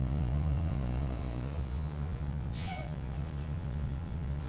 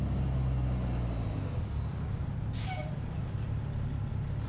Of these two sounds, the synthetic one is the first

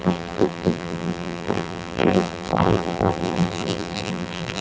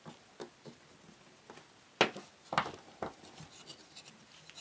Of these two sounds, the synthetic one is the first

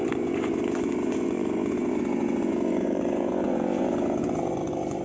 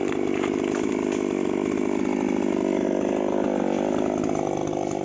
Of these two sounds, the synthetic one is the first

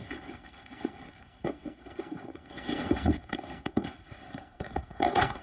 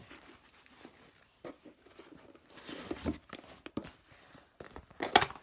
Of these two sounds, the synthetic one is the first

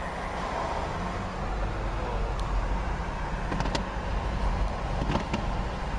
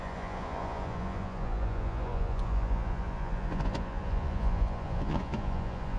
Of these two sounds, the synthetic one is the second